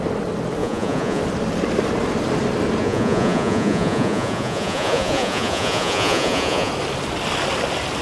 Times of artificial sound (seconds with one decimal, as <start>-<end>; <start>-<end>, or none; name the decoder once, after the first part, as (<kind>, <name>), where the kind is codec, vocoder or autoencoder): 0.6-1.2 (vocoder, Vocos); 2.8-6.7